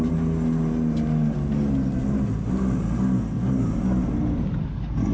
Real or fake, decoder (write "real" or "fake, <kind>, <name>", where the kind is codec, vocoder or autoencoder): real